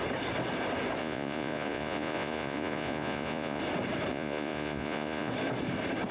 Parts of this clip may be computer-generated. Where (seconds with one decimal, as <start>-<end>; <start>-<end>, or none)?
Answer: 1.0-3.6; 4.1-5.3